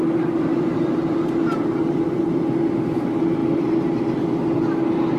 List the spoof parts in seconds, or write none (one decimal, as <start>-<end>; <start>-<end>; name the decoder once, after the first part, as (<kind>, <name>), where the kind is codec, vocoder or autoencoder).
none